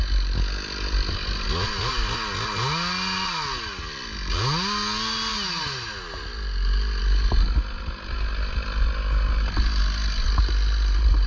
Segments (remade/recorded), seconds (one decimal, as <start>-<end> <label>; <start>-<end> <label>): 0.0-11.3 recorded